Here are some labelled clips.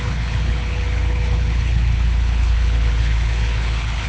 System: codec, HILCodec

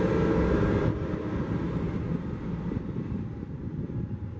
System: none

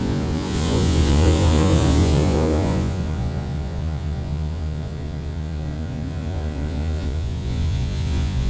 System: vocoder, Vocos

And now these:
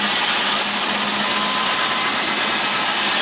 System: none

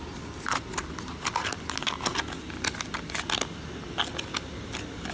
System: none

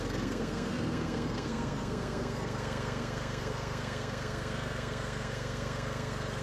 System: codec, SNAC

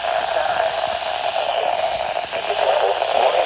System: none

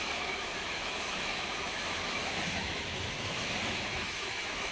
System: autoencoder, DAC-VAE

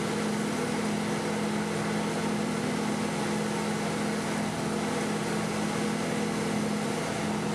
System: none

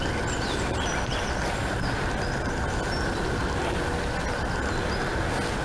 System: none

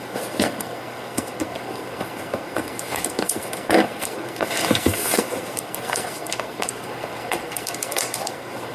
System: codec, SNAC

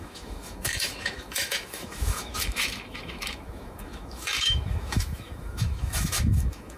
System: autoencoder, DAC-VAE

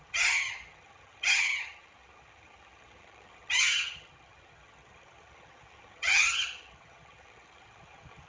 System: vocoder, HiFi-GAN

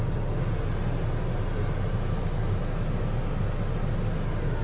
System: none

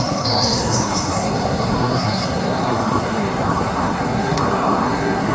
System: codec, SNAC